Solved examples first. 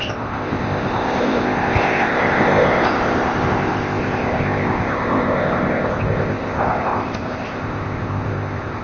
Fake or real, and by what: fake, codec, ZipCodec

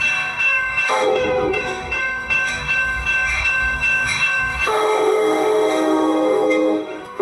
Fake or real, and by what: fake, autoencoder, DAC-VAE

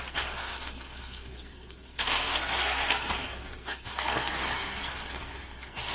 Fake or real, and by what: fake, codec, SNAC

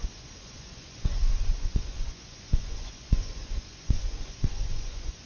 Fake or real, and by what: fake, vocoder, Vocos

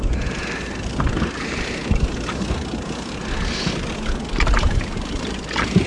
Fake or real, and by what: real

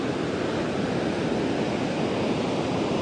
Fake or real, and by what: real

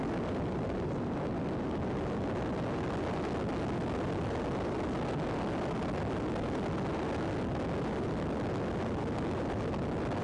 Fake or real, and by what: real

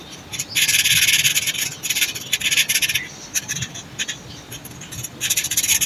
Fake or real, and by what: real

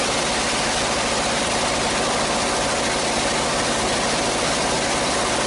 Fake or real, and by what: real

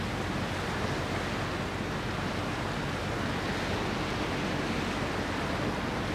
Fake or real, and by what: real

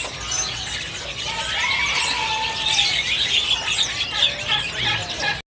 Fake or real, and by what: real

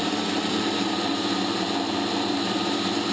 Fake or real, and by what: fake, vocoder, BigVGAN v2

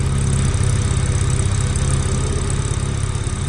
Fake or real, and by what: real